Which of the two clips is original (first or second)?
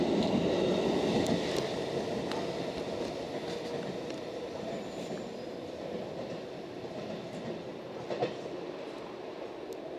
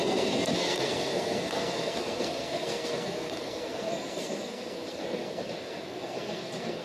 first